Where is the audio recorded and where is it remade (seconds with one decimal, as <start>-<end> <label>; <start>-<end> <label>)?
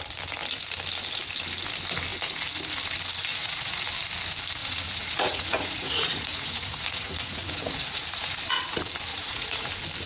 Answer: 0.0-3.3 recorded; 3.3-3.8 remade; 3.8-4.6 recorded; 4.6-8.4 remade; 8.4-9.1 recorded; 9.1-9.7 remade; 9.7-10.1 recorded